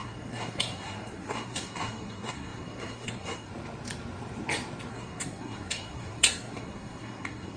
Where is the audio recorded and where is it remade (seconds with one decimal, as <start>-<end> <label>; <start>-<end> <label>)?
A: 0.0-3.5 remade; 3.5-4.9 recorded; 4.9-7.6 remade